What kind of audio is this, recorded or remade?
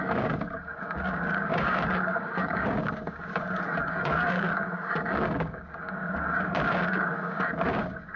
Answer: remade